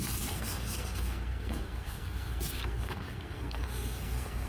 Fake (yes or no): yes